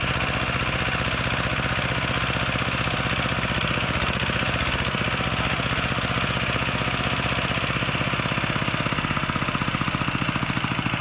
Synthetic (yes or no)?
no